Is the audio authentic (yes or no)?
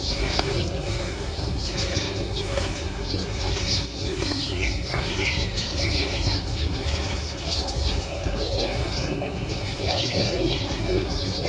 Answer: no